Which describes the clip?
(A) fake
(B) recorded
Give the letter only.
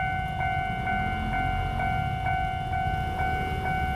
B